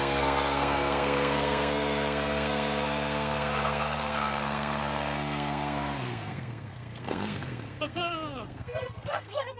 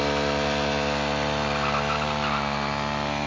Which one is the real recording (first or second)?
second